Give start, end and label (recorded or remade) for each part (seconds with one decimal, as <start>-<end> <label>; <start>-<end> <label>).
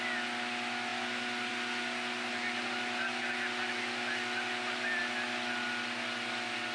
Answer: 0.0-6.7 recorded